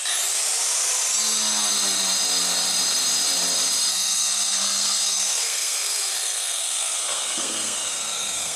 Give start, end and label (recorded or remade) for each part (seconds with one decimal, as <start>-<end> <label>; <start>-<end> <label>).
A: 0.0-3.9 recorded; 3.9-8.6 remade